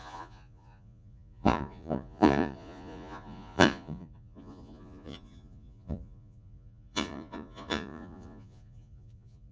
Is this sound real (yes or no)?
no